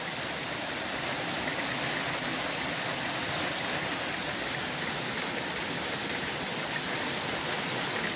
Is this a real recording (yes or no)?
no